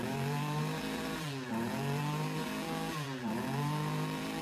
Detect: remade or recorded remade